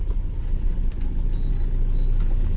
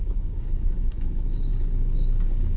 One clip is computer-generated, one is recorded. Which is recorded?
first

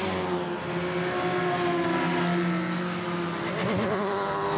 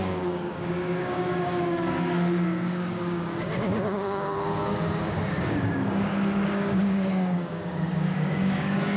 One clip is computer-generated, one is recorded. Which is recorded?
first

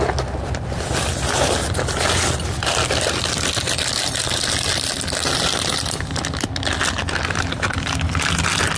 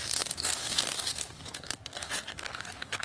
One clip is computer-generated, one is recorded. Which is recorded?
first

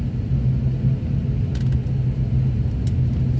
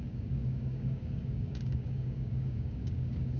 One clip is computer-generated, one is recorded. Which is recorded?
first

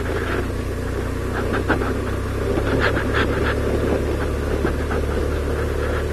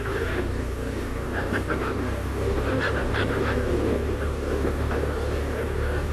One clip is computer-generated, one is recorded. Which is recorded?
first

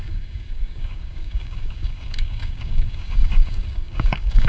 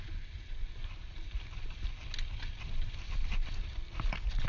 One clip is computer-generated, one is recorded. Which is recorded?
second